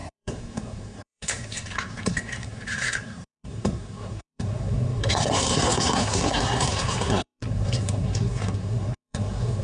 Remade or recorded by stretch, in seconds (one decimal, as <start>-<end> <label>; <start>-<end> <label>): 0.0-9.6 remade